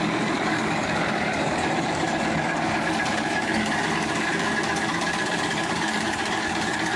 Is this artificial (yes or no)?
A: yes